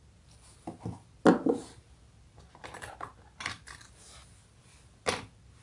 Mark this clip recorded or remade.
recorded